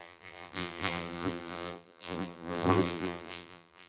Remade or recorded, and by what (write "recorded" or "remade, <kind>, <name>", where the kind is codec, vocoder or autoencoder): remade, vocoder, BigVGAN v2